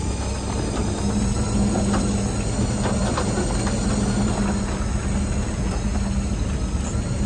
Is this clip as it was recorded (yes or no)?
yes